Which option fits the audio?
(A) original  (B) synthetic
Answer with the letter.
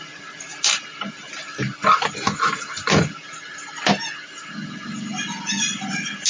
A